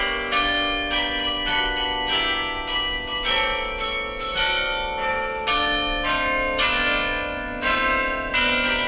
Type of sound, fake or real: real